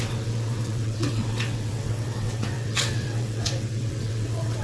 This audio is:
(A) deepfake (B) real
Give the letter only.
A